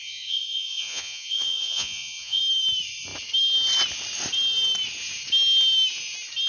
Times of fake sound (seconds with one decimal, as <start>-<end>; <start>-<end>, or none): 0.0-2.4